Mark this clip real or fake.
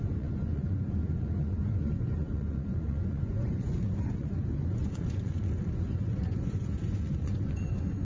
fake